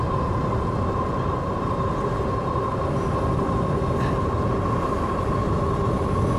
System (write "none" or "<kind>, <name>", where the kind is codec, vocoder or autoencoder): none